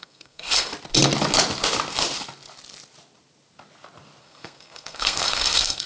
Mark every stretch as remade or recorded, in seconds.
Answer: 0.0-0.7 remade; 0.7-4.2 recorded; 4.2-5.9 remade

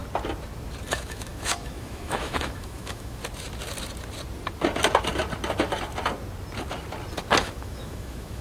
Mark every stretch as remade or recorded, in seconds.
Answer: 0.0-0.9 recorded; 0.9-3.2 remade; 3.2-7.4 recorded; 7.4-8.4 remade

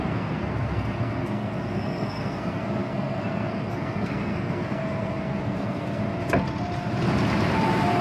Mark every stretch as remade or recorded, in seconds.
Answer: 0.0-6.0 remade; 6.0-8.0 recorded